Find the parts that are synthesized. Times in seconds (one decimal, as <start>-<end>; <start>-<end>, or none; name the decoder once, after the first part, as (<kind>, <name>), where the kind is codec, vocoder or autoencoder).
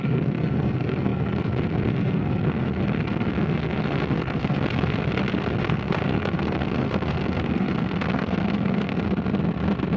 0.0-5.0 (codec, SNAC); 5.6-8.9